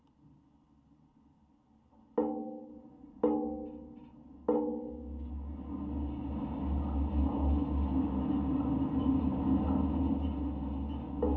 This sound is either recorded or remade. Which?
recorded